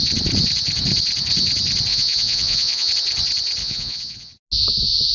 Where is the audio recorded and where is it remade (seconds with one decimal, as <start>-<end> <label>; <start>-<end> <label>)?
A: 0.0-1.9 recorded; 1.9-2.9 remade; 2.9-3.6 recorded; 3.6-4.3 remade; 4.3-5.1 recorded